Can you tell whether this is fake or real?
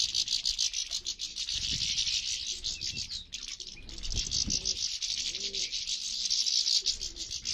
real